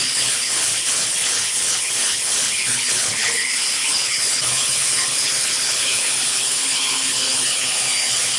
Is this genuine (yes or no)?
no